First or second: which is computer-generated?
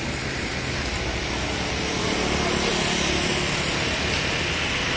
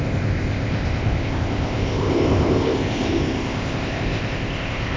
second